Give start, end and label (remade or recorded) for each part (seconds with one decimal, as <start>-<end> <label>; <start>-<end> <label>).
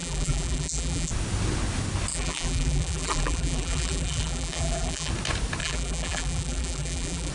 0.0-1.1 remade; 1.1-2.1 recorded; 2.1-5.1 remade; 5.1-5.6 recorded; 5.6-7.3 remade